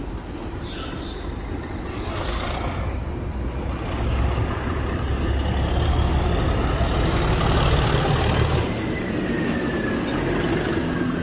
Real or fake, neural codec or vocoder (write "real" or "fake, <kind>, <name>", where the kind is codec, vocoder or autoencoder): real